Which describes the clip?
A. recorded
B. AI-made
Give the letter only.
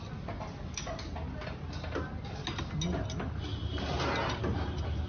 A